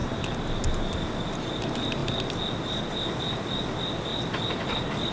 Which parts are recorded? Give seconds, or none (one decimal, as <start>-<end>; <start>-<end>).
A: 0.0-5.1